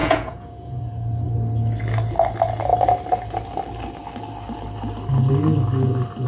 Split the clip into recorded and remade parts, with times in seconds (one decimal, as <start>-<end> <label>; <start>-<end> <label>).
0.0-1.3 remade; 1.3-6.3 recorded